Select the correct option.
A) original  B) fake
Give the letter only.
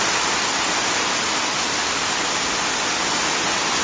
A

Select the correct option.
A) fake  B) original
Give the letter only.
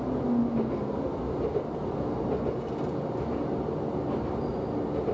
B